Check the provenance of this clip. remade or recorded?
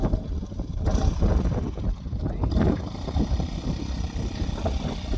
recorded